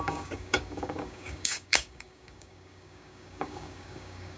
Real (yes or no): no